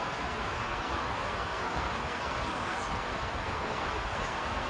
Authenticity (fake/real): fake